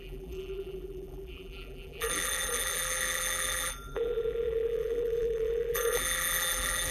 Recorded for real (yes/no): no